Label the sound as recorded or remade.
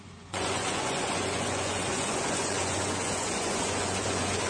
remade